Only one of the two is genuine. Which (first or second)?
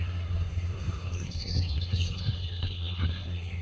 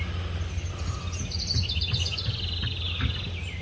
second